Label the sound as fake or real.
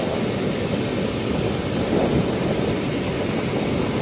real